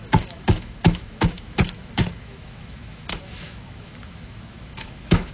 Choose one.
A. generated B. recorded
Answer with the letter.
A